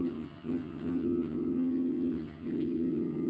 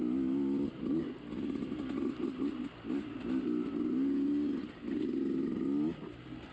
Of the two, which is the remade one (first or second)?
first